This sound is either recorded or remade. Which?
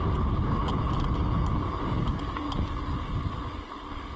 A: recorded